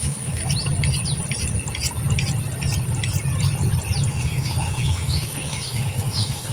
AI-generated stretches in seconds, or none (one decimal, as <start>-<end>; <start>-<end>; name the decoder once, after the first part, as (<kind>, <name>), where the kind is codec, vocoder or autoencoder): 0.0-0.4 (autoencoder, DAC-VAE); 4.1-6.5

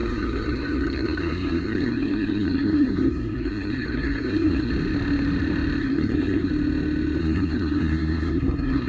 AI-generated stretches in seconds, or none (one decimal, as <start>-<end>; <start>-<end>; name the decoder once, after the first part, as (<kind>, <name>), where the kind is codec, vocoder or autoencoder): 0.0-4.7 (codec, SNAC); 5.8-6.5; 7.2-8.9

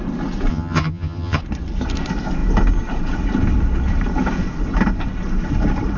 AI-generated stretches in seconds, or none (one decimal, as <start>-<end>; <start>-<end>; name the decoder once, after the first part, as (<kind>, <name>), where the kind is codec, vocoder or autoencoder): 0.5-1.4 (vocoder, HiFi-GAN)

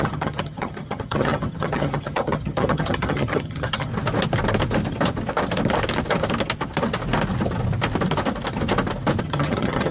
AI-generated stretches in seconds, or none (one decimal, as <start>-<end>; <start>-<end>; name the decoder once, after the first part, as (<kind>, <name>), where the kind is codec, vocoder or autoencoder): 0.0-3.9 (vocoder, HiFi-GAN); 9.2-9.9

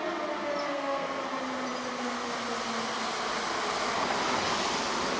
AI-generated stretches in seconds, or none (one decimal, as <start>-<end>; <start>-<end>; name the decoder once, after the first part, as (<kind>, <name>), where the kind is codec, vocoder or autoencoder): 0.6-1.2 (codec, SNAC)

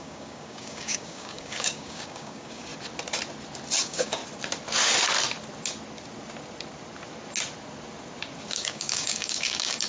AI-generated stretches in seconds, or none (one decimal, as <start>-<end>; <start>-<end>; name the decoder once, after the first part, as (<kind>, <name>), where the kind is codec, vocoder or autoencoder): 0.0-2.7 (codec, DAC); 3.8-4.2; 8.5-9.9